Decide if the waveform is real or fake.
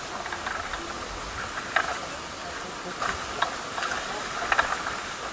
real